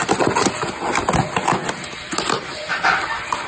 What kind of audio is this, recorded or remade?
recorded